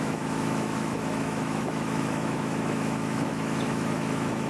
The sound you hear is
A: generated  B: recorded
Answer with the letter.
A